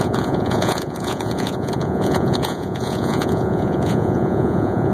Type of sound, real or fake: fake